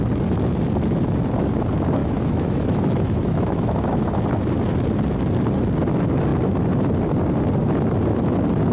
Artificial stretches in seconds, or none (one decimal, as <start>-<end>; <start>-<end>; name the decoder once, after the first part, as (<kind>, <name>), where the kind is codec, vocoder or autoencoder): 2.0-4.2 (autoencoder, DAC-VAE)